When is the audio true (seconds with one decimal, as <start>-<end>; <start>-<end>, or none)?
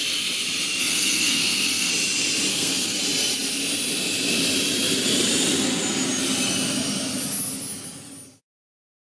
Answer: 0.0-0.8; 1.9-2.5; 3.0-9.2